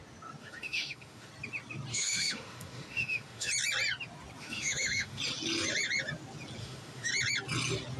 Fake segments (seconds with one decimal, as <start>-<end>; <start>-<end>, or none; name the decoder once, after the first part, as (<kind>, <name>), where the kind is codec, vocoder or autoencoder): 0.4-1.3 (autoencoder, DAC-VAE); 1.9-3.5; 4.4-5.2; 6.6-7.1